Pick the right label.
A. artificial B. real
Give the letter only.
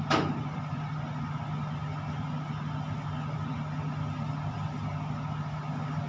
B